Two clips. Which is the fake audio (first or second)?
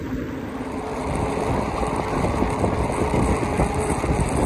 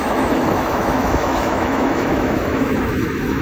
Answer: second